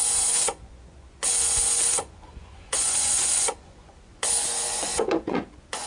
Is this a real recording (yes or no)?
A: no